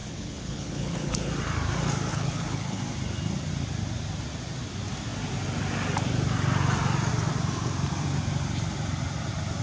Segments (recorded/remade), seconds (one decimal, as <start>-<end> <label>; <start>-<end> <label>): 0.0-1.3 remade; 1.3-2.1 recorded; 2.1-2.8 remade; 2.8-9.6 recorded